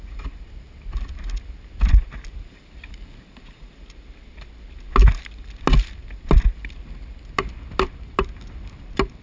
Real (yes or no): yes